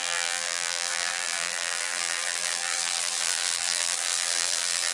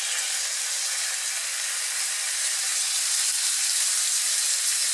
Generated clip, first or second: first